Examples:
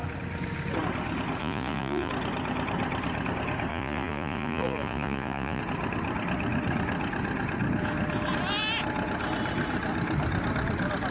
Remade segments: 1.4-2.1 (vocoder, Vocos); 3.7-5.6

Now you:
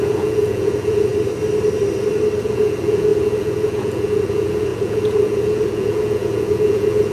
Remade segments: 0.0-1.1 (vocoder, Vocos); 2.4-7.1